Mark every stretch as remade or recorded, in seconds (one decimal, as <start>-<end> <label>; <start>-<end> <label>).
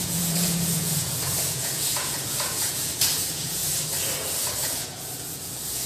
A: 0.0-3.6 remade; 3.6-4.6 recorded; 4.6-5.9 remade